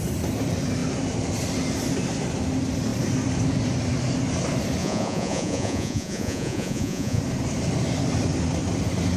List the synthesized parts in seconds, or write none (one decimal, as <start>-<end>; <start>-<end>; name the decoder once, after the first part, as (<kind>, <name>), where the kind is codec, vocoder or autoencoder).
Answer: 4.8-7.2 (vocoder, Vocos)

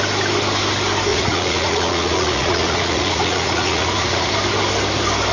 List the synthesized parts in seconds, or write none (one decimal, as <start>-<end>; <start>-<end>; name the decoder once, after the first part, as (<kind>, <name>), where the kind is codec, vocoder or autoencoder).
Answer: 1.1-4.3 (vocoder, Vocos)

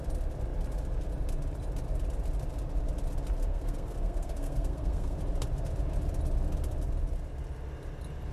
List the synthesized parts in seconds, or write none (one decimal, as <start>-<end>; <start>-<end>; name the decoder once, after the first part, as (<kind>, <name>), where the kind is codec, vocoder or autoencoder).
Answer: 3.5-5.2 (codec, SNAC)

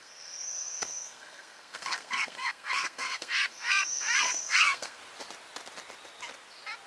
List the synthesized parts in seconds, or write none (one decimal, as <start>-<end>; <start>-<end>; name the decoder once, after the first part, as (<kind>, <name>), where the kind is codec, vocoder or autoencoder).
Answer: 0.0-5.0 (codec, SNAC)

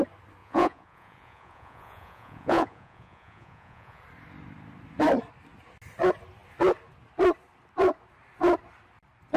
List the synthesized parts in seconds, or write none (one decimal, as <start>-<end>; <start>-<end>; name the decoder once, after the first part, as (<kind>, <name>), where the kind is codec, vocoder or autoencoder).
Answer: 0.4-4.0 (vocoder, Vocos)

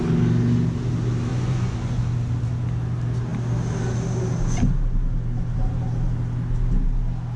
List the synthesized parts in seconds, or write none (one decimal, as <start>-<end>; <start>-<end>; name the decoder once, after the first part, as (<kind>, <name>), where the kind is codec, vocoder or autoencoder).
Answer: 1.3-2.0 (vocoder, Vocos)

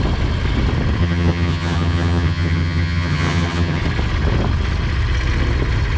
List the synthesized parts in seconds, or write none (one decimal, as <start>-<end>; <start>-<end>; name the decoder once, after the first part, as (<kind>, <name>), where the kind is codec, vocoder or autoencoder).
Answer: 1.0-3.8 (vocoder, HiFi-GAN)